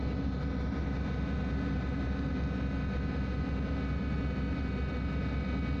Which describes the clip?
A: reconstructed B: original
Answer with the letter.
B